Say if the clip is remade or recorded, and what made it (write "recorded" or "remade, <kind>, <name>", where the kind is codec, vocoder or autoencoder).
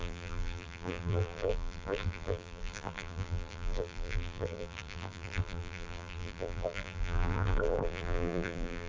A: remade, vocoder, BigVGAN v2